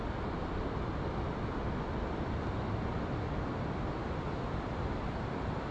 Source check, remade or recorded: recorded